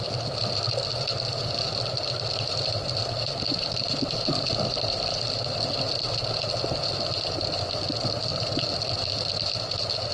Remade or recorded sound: recorded